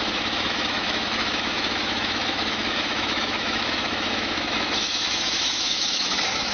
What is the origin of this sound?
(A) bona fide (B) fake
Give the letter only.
B